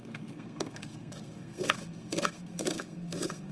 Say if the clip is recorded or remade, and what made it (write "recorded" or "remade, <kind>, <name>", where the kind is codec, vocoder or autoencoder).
remade, codec, SNAC